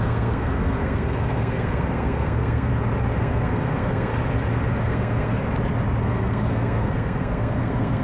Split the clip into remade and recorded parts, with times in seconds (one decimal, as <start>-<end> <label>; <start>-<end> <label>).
0.0-2.7 remade; 2.7-3.2 recorded; 3.2-4.1 remade; 4.1-4.8 recorded; 4.8-5.3 remade; 5.3-6.0 recorded; 6.0-8.0 remade